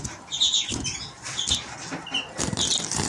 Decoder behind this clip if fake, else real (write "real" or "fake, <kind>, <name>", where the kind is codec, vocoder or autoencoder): real